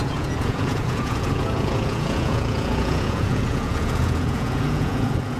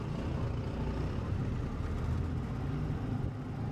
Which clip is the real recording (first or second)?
second